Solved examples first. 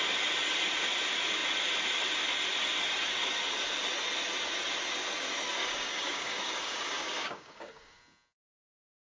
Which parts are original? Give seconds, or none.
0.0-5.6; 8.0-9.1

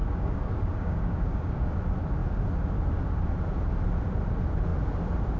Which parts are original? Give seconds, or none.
1.7-5.4

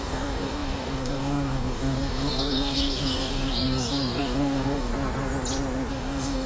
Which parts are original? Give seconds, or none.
4.9-5.9

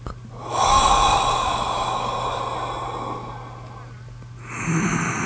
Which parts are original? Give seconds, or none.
0.0-0.5; 2.4-5.3

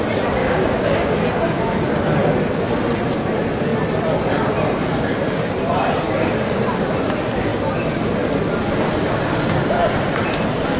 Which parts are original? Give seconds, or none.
0.0-0.4; 1.2-10.8

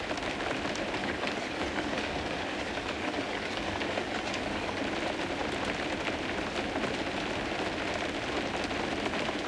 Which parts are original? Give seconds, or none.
0.0-1.0; 4.8-9.5

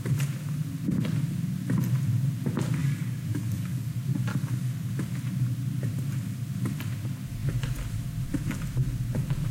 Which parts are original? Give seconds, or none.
0.0-2.8; 3.9-4.3; 4.9-9.5